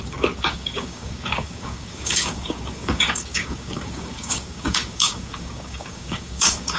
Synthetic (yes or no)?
yes